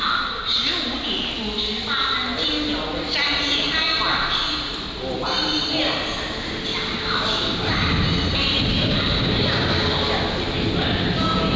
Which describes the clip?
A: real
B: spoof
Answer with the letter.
A